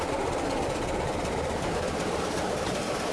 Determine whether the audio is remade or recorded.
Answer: remade